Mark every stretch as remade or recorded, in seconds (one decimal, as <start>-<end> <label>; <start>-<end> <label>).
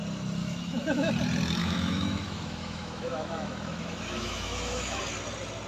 0.0-0.4 recorded; 0.4-1.1 remade; 1.1-1.6 recorded; 1.6-5.0 remade; 5.0-5.7 recorded